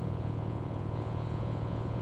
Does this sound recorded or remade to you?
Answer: remade